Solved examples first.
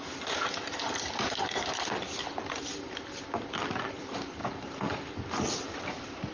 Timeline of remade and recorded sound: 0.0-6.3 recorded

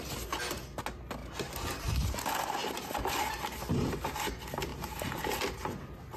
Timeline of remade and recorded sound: 0.0-6.2 recorded

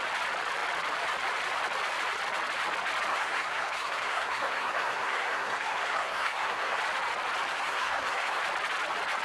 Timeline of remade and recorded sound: 0.0-3.1 recorded; 3.1-6.8 remade; 6.8-7.5 recorded; 7.5-8.4 remade; 8.4-9.2 recorded

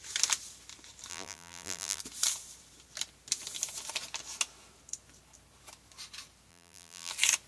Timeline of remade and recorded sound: 0.0-1.1 recorded; 1.1-2.0 remade; 2.0-6.5 recorded; 6.5-7.1 remade; 7.1-7.5 recorded

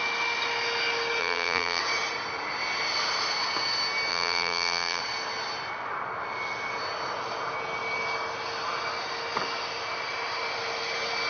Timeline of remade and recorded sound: 0.0-1.2 recorded; 1.2-1.8 remade; 1.8-4.1 recorded; 4.1-5.0 remade; 5.0-11.3 recorded

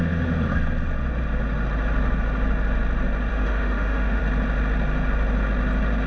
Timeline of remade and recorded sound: 0.0-3.3 recorded; 3.3-4.2 remade; 4.2-6.1 recorded

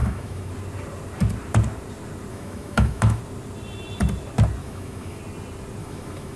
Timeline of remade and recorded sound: 0.0-0.5 remade; 0.5-2.3 recorded; 2.3-3.2 remade; 3.2-4.6 recorded; 4.6-5.2 remade; 5.2-5.8 recorded; 5.8-6.4 remade

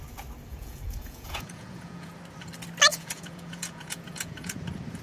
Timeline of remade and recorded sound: 0.0-0.5 recorded; 0.5-2.1 remade; 2.1-2.9 recorded; 2.9-4.6 remade; 4.6-5.0 recorded